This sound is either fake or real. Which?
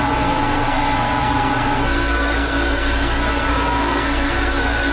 fake